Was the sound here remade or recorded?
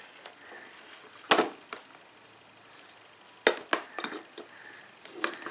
recorded